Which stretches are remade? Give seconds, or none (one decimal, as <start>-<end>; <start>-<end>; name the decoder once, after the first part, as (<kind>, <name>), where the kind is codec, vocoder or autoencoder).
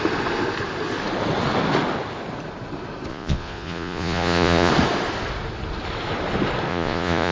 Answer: 3.1-4.7 (vocoder, Vocos); 6.7-7.3